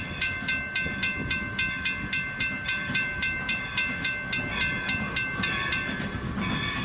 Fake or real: real